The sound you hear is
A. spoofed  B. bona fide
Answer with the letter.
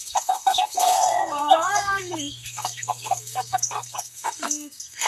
A